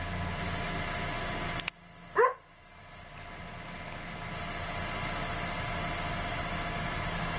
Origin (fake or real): real